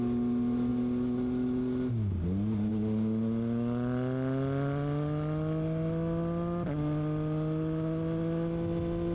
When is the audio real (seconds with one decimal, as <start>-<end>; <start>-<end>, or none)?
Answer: 0.0-9.1